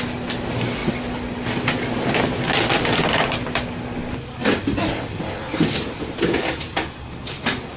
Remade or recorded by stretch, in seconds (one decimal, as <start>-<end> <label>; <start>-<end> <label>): 0.0-7.8 recorded